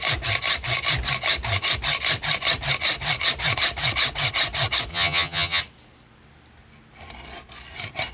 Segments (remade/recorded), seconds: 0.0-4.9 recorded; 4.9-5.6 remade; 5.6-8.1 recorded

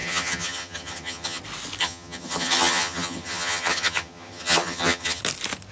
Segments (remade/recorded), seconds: 0.0-1.4 remade; 1.4-1.8 recorded; 1.8-5.2 remade; 5.2-5.7 recorded

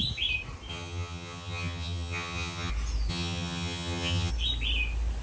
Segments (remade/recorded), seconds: 0.0-0.7 recorded; 0.7-2.7 remade; 2.7-3.1 recorded; 3.1-4.3 remade; 4.3-5.2 recorded

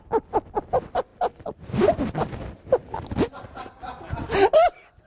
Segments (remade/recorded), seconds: 0.0-5.1 recorded